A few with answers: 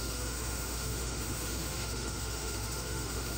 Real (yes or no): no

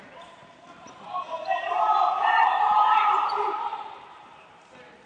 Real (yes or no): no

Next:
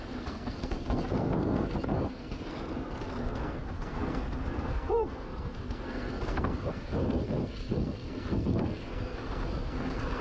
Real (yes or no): no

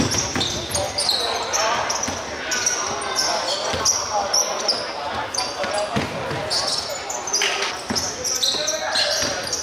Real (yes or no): yes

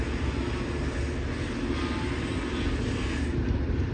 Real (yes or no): yes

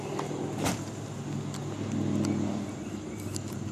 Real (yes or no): yes